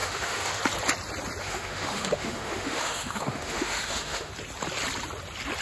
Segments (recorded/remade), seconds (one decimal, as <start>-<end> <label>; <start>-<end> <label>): 0.0-0.6 remade; 0.6-1.4 recorded; 1.4-4.3 remade; 4.3-5.6 recorded